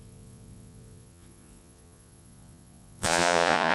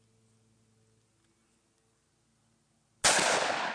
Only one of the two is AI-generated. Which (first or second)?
first